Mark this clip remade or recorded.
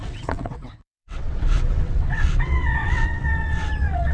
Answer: remade